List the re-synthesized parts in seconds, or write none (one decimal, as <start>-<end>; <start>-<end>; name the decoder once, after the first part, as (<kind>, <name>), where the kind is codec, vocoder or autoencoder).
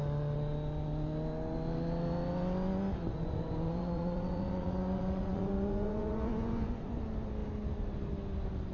3.1-7.0 (vocoder, Vocos)